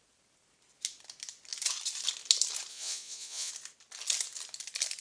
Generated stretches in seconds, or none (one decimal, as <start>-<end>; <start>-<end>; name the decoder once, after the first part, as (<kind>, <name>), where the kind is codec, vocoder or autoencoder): 2.7-3.5 (vocoder, Vocos)